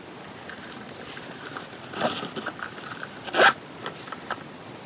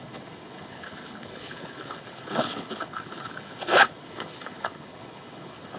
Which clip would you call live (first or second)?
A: first